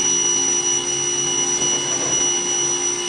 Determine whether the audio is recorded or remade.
recorded